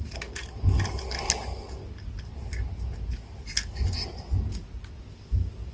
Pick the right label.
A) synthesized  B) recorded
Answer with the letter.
B